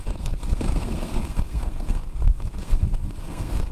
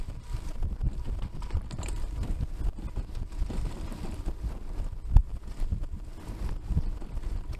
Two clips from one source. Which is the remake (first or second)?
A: first